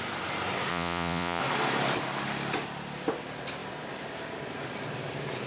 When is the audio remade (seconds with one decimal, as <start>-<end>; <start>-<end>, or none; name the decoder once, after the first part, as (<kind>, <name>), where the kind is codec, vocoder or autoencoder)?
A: 0.7-1.4 (vocoder, Vocos)